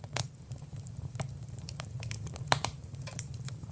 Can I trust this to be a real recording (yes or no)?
no